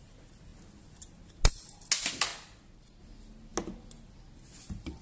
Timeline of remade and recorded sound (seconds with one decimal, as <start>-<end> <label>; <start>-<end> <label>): 0.0-5.0 recorded